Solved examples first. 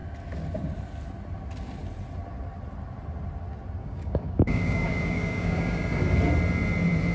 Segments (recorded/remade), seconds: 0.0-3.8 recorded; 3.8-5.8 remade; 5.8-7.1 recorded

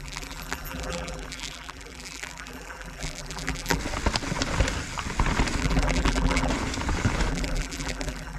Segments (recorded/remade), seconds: 0.0-3.8 remade; 3.8-5.6 recorded; 5.6-6.5 remade; 6.5-7.3 recorded; 7.3-8.4 remade

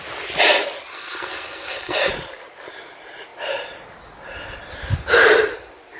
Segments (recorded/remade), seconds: 0.0-0.9 recorded; 0.9-2.1 remade; 2.1-6.0 recorded